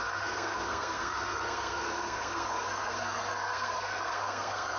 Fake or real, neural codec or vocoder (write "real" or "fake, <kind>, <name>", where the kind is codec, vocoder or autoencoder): fake, codec, SNAC